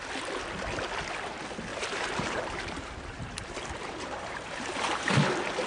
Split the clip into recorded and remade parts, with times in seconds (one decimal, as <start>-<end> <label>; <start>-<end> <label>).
0.0-1.7 recorded; 1.7-5.1 remade; 5.1-5.7 recorded